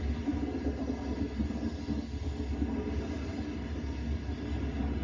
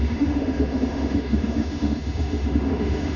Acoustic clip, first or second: first